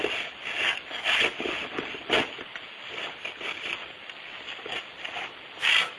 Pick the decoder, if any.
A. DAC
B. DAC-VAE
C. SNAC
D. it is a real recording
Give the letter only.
D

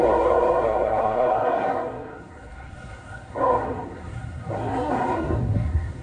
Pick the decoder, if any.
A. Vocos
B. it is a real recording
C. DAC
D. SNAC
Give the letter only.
D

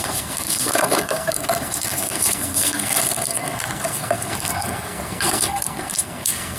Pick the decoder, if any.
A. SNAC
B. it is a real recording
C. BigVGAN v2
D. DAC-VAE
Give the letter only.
A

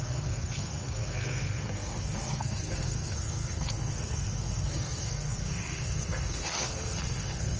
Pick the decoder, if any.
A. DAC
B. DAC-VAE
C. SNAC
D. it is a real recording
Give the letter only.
C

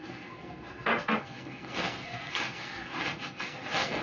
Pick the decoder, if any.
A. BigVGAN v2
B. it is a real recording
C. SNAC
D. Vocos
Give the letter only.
C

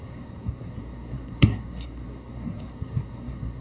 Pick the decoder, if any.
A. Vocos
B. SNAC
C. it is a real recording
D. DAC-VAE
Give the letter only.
B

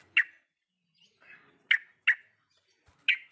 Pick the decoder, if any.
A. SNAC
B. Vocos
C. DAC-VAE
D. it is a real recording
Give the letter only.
D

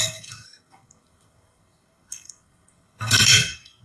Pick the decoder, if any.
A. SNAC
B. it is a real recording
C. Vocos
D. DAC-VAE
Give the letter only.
A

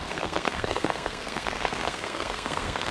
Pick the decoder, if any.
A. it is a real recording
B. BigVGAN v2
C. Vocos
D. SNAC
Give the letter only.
D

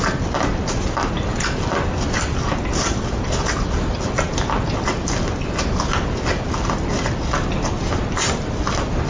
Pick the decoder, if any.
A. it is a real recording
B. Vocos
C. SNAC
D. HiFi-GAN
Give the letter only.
A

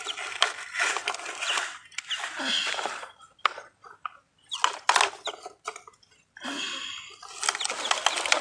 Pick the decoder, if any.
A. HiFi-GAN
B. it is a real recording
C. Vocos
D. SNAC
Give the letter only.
B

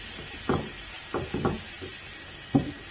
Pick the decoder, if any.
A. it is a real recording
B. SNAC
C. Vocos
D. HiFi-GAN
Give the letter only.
A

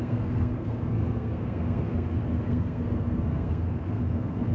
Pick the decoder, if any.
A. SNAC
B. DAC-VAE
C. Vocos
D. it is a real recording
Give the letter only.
A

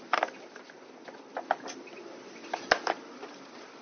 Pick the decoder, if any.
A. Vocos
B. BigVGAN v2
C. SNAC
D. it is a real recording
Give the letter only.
D